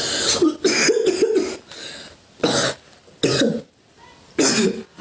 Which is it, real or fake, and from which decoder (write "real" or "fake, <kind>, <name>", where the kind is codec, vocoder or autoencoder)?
real